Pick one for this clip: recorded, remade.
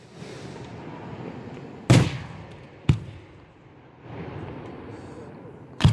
recorded